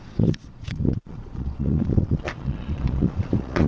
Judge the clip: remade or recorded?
remade